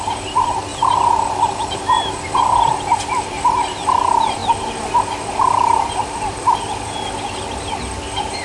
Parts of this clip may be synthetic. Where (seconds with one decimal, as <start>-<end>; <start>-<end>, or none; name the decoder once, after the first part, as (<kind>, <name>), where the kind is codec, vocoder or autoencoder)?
0.0-0.7 (vocoder, BigVGAN v2); 2.4-8.4